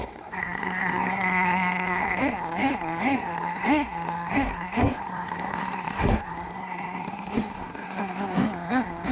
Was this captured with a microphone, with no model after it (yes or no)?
no